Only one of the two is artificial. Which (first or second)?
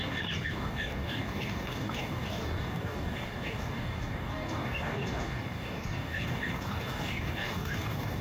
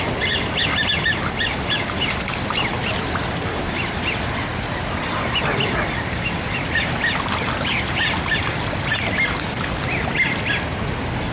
first